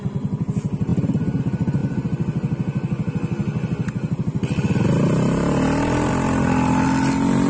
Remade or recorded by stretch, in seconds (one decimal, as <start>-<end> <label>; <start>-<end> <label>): 0.0-7.5 recorded